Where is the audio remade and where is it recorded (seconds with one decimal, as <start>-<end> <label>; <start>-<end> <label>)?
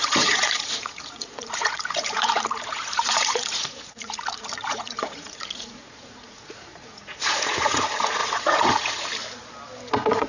0.0-9.1 remade; 9.1-9.9 recorded; 9.9-10.3 remade